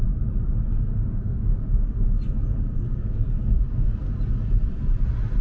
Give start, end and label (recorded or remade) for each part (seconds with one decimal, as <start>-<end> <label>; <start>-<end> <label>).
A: 0.0-0.9 recorded; 0.9-1.6 remade; 1.6-5.4 recorded

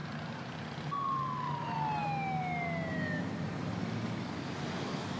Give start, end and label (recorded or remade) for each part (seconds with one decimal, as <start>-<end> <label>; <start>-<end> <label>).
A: 0.0-5.2 recorded

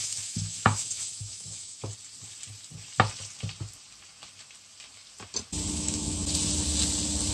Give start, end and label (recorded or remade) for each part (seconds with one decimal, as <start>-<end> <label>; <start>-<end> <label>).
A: 0.0-1.9 remade; 1.9-5.7 recorded; 5.7-6.2 remade; 6.2-7.3 recorded

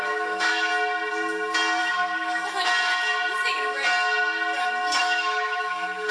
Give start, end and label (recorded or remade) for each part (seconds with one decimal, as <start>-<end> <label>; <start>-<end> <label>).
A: 0.0-0.7 remade; 0.7-1.8 recorded; 1.8-2.4 remade; 2.4-5.0 recorded; 5.0-6.1 remade

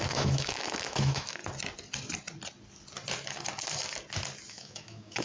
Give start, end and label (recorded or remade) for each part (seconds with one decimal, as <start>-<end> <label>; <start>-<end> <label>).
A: 0.0-1.4 remade; 1.4-4.5 recorded; 4.5-5.2 remade

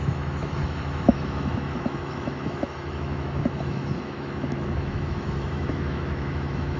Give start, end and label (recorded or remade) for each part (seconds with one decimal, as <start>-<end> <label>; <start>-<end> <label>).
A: 0.0-6.8 remade

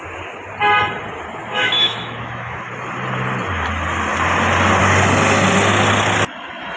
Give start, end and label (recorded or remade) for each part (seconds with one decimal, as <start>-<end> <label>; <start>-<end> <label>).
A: 0.0-1.5 recorded; 1.5-2.7 remade; 2.7-6.8 recorded